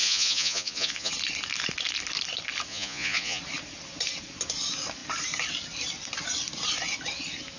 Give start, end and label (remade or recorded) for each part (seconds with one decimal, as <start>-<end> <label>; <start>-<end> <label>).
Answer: 0.0-1.1 remade; 1.1-2.7 recorded; 2.7-3.4 remade; 3.4-7.6 recorded